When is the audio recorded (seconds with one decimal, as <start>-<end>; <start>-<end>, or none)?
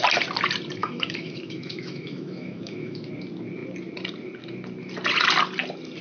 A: 0.0-0.8; 3.1-6.0